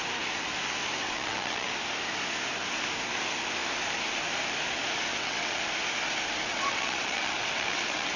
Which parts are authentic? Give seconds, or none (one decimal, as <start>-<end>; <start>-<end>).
0.0-1.0; 1.7-5.1; 5.6-6.5